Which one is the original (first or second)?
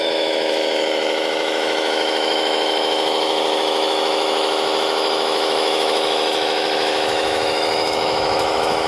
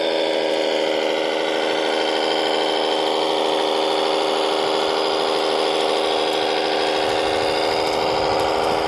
second